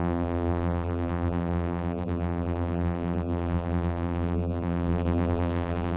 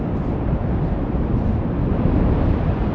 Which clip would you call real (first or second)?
second